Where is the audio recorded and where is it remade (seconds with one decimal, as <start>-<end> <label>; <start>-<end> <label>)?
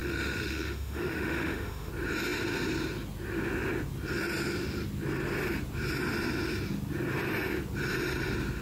0.0-1.9 remade; 1.9-8.6 recorded